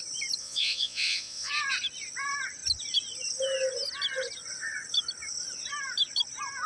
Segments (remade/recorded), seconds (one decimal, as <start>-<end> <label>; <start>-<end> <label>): 0.0-0.4 recorded; 0.4-1.5 remade; 1.5-6.7 recorded